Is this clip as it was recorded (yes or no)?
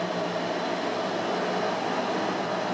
yes